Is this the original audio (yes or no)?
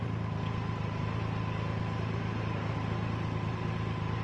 yes